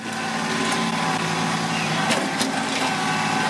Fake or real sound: real